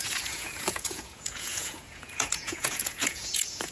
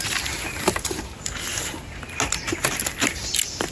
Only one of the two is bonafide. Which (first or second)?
second